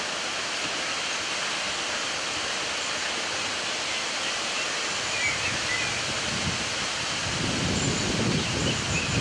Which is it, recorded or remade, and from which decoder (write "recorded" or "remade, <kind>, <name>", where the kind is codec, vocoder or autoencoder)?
recorded